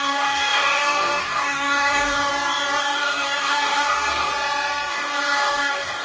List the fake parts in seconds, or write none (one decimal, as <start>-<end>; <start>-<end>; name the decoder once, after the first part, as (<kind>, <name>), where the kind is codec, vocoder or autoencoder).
0.0-2.3 (codec, DAC); 2.8-4.3; 4.9-6.0